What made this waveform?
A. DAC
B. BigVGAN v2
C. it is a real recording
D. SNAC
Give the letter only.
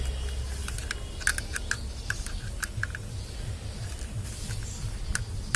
C